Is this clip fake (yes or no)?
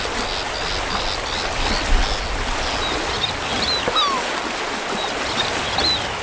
no